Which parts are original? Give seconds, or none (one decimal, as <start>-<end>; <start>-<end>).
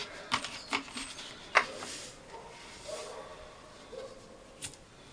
0.0-5.1